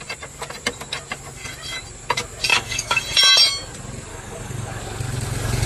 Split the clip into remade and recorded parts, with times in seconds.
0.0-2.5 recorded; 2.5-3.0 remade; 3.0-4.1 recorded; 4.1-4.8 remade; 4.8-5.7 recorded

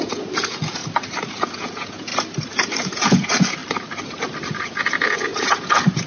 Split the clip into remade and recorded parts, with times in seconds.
0.0-0.8 remade; 0.8-1.4 recorded; 1.4-2.1 remade; 2.1-2.8 recorded; 2.8-3.6 remade; 3.6-4.5 recorded; 4.5-6.1 remade

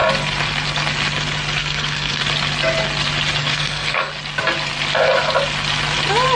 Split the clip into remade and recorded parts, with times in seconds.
0.0-1.6 recorded; 1.6-2.2 remade; 2.2-3.4 recorded; 3.4-4.1 remade; 4.1-6.4 recorded

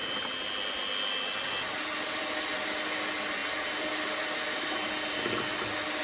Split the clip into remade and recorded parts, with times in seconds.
0.0-6.0 recorded

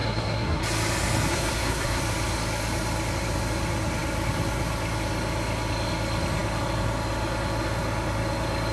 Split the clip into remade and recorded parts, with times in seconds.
0.0-0.6 remade; 0.6-1.3 recorded; 1.3-2.0 remade; 2.0-8.7 recorded

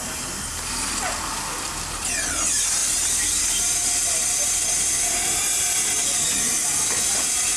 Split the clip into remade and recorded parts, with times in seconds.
0.0-7.6 recorded